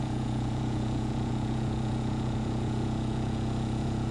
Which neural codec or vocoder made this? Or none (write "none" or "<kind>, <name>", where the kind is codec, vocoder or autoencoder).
vocoder, Vocos